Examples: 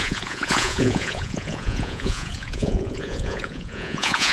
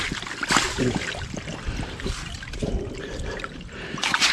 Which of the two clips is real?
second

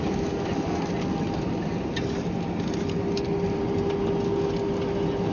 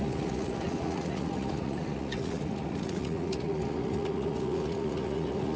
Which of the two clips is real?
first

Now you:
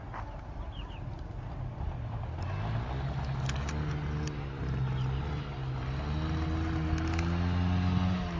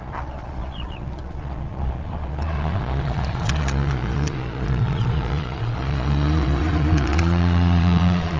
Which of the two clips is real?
first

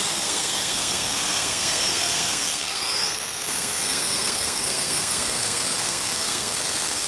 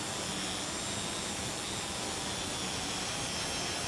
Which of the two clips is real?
second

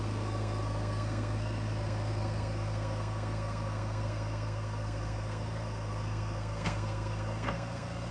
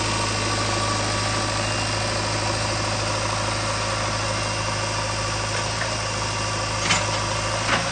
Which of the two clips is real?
second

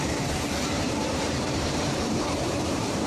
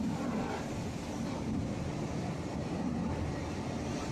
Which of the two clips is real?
second